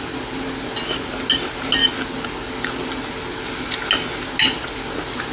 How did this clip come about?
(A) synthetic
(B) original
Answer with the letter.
B